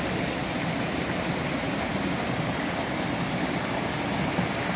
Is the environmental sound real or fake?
real